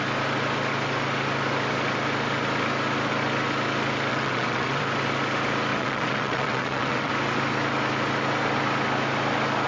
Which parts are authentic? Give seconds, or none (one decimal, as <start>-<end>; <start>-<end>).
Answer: 0.0-4.1; 4.8-5.7; 7.1-9.7

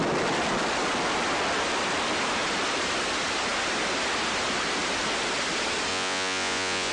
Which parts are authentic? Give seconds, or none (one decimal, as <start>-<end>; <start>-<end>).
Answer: 0.0-5.9

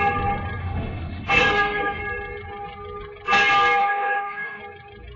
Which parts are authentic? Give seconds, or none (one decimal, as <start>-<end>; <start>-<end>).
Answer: 0.0-0.6; 2.0-3.8; 4.6-5.2

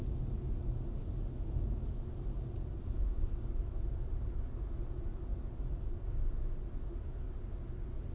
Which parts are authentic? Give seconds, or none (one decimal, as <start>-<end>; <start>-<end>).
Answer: 0.0-8.1

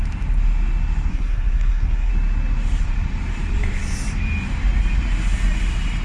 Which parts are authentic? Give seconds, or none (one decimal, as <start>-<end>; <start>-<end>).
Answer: 0.0-1.1; 2.1-6.0

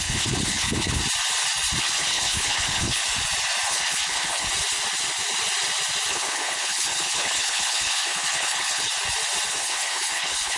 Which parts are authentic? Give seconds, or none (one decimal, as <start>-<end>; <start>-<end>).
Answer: 1.0-1.8; 3.0-3.7; 4.5-6.1; 8.9-9.5

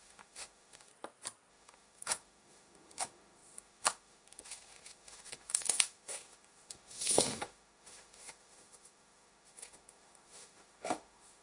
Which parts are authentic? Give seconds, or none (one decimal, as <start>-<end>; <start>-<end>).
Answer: 0.9-1.5